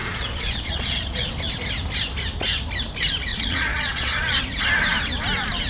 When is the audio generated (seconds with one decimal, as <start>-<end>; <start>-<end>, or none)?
0.0-1.3; 3.3-4.4